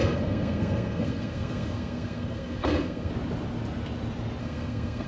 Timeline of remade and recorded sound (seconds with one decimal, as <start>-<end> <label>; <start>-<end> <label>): 0.0-3.1 remade; 3.1-4.4 recorded; 4.4-5.1 remade